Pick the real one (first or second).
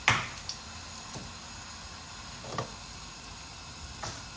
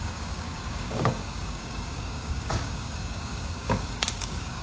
first